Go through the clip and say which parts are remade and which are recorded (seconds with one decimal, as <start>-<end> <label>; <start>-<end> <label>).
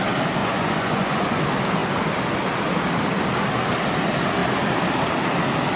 0.0-0.4 recorded; 0.4-1.4 remade; 1.4-5.8 recorded